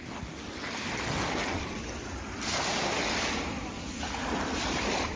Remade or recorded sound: recorded